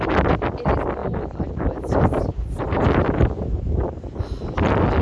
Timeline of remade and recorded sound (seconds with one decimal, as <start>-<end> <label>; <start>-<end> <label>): 0.0-1.0 recorded; 1.0-4.0 remade; 4.0-5.0 recorded